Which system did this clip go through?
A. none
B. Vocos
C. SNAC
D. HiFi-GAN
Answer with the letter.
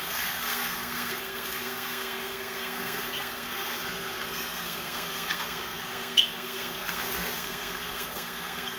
C